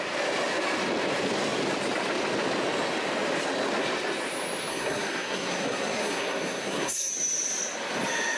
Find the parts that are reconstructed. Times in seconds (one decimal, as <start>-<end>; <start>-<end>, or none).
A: 4.7-7.1